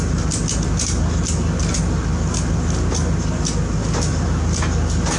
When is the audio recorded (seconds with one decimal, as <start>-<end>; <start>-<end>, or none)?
0.0-5.2